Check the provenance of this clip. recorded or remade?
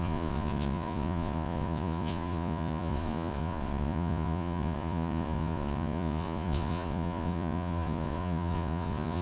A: remade